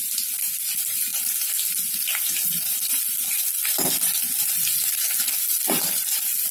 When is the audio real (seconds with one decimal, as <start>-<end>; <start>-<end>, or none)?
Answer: 0.0-6.5